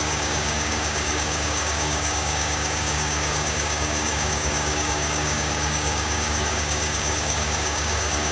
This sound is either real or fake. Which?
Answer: fake